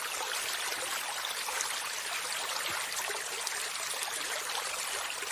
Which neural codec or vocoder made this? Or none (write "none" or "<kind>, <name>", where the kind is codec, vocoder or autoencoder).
none